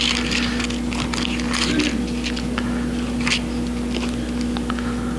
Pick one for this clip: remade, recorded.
recorded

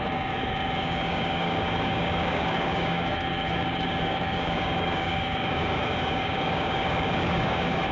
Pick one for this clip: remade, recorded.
remade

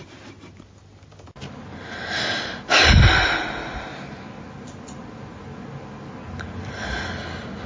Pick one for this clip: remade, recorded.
recorded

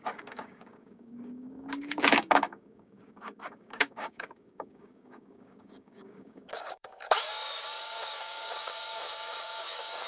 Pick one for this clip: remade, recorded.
remade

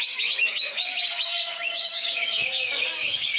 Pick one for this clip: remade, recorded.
remade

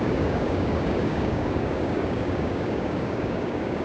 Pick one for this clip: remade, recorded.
remade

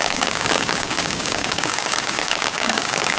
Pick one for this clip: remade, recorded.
remade